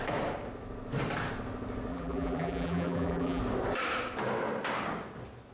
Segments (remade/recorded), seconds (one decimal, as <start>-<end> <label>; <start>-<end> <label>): 0.0-1.9 recorded; 1.9-3.4 remade; 3.4-5.5 recorded